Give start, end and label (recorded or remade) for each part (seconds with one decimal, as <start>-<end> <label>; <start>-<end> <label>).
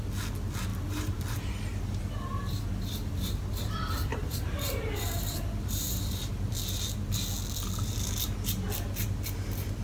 0.0-0.7 recorded; 0.7-1.2 remade; 1.2-4.1 recorded; 4.1-6.3 remade; 6.3-9.8 recorded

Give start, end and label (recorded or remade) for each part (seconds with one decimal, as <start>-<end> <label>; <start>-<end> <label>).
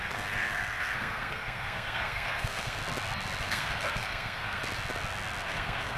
0.0-2.8 remade; 2.8-3.4 recorded; 3.4-4.6 remade; 4.6-5.4 recorded; 5.4-6.0 remade